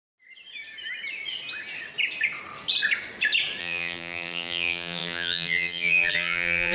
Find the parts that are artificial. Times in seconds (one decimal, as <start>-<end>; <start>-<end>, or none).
3.6-6.7